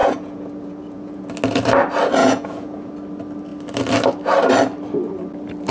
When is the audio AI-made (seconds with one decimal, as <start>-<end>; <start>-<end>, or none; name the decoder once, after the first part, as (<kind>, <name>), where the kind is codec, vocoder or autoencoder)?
0.0-1.3 (vocoder, Vocos); 2.2-2.9